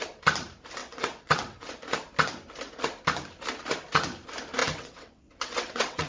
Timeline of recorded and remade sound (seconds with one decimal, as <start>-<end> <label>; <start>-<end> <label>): 0.0-0.8 recorded; 0.8-1.7 remade; 1.7-4.6 recorded; 4.6-6.1 remade